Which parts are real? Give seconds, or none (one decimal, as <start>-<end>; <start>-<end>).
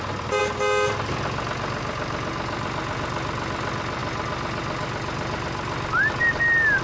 0.0-6.8